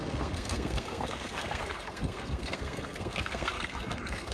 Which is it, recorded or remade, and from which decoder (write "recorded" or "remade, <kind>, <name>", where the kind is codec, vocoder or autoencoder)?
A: remade, codec, SNAC